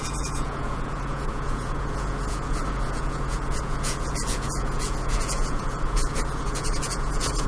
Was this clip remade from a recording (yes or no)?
yes